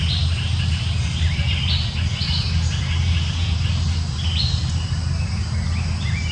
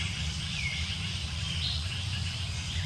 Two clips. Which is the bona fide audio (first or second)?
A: first